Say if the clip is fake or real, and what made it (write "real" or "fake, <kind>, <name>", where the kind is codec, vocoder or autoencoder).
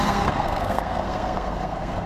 fake, codec, SNAC